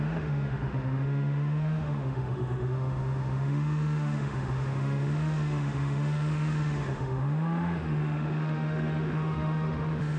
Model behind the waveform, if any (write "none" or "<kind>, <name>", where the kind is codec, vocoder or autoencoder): autoencoder, DAC-VAE